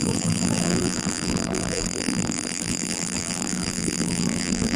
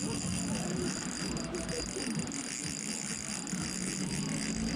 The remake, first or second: first